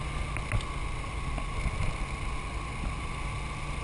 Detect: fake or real real